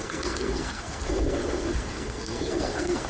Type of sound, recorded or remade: remade